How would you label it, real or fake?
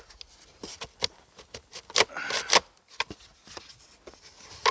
real